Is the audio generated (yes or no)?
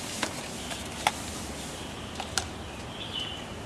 no